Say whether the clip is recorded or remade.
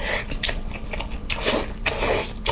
recorded